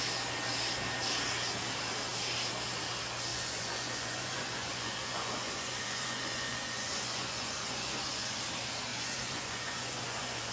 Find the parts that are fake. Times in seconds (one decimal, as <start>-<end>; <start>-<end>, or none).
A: 3.3-8.4; 8.9-10.5

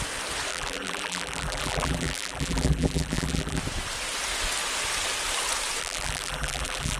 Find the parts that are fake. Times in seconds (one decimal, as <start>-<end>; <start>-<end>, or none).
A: 0.5-3.6; 5.8-7.0

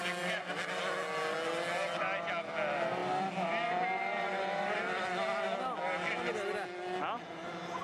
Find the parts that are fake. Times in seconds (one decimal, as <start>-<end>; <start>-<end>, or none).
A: none

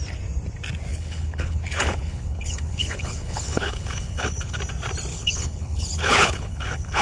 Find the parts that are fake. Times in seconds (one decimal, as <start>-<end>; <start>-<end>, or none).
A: 0.9-4.6; 5.1-7.0